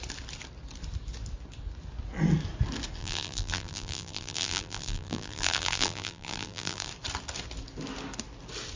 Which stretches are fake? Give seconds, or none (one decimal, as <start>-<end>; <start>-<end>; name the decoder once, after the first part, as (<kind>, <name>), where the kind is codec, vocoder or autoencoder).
3.0-6.9 (vocoder, BigVGAN v2)